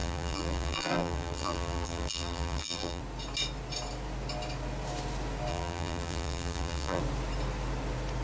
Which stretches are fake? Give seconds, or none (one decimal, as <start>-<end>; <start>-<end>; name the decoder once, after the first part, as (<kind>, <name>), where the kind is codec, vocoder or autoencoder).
0.0-3.0 (vocoder, BigVGAN v2); 5.5-7.0